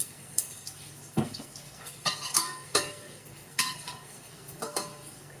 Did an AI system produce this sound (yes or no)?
yes